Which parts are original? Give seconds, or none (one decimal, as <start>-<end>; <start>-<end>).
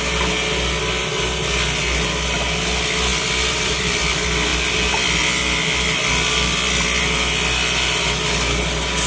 0.0-9.1